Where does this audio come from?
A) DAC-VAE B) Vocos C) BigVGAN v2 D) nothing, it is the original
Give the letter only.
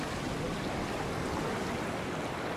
D